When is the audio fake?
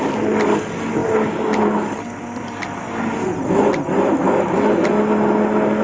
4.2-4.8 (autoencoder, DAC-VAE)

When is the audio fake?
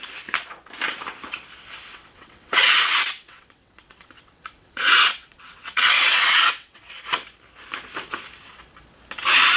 1.9-6.9 (vocoder, WaveNeXt)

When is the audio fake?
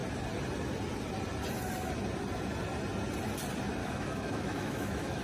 3.8-5.2 (autoencoder, DAC-VAE)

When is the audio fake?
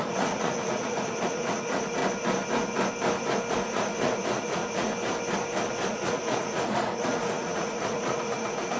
0.0-2.0 (vocoder, Vocos); 3.5-4.9; 5.9-8.8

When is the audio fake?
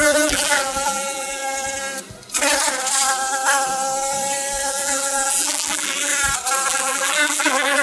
0.0-1.4 (vocoder, BigVGAN v2); 4.7-6.1; 6.7-7.8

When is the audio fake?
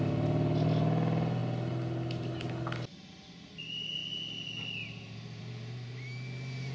none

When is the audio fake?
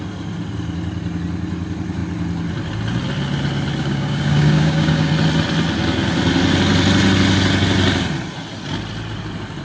3.8-5.1 (codec, DAC)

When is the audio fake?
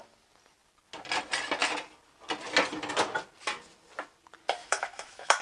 4.6-5.4 (autoencoder, DAC-VAE)